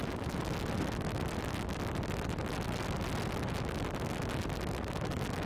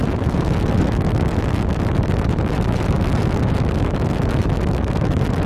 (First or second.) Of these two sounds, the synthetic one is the second